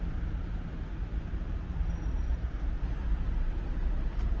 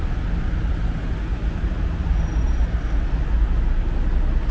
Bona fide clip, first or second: second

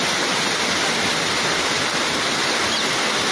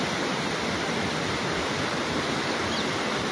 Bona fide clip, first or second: first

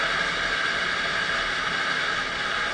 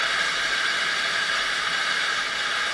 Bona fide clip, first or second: first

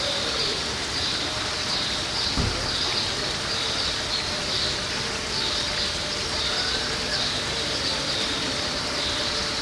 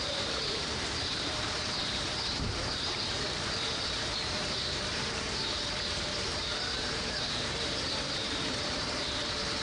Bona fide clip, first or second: first